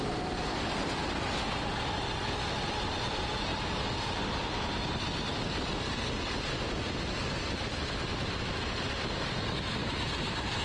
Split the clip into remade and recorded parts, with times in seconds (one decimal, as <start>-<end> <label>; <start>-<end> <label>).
0.0-10.6 recorded